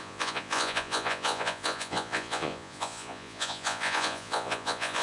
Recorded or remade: remade